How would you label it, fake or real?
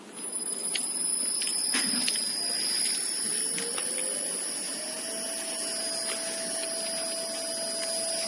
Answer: real